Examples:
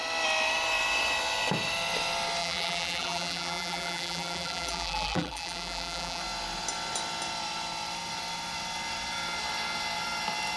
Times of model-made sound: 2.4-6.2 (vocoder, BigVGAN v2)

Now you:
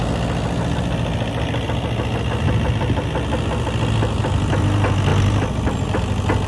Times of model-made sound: 5.1-6.0 (vocoder, BigVGAN v2)

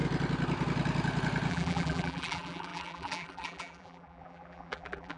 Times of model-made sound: 1.5-5.2 (vocoder, BigVGAN v2)

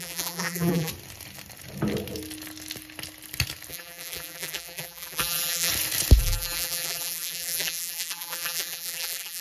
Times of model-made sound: 0.0-0.9 (vocoder, BigVGAN v2); 3.7-5.7; 6.2-9.4

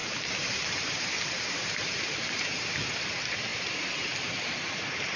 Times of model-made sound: 0.0-3.1 (vocoder, BigVGAN v2); 3.5-5.2

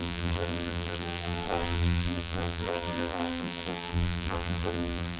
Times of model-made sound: 0.0-5.2 (vocoder, BigVGAN v2)

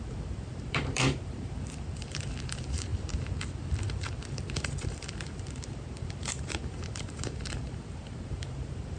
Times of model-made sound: 0.0-2.9 (vocoder, BigVGAN v2); 4.3-9.0